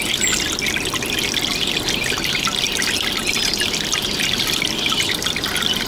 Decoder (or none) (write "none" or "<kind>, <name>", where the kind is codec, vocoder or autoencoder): none